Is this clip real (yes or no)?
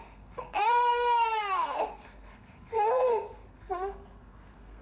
no